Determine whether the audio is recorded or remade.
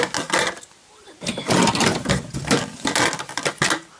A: recorded